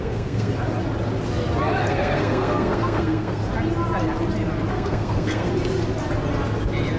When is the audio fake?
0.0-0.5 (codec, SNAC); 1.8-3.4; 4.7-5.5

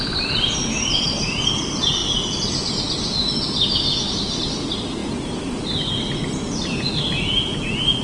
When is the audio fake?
none

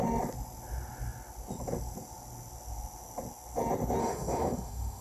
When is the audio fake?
4.0-5.0 (autoencoder, DAC-VAE)

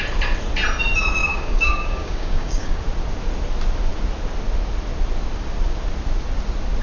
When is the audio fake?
1.2-2.8 (codec, DAC)

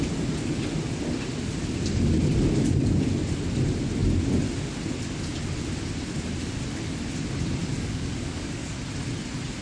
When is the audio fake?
7.6-8.7 (codec, DAC)